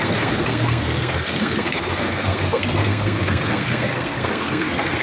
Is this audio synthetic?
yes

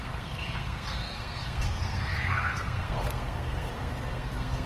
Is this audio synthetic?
yes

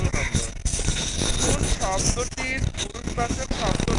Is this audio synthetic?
no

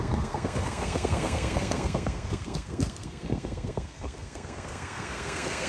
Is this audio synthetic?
yes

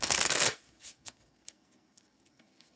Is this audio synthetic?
yes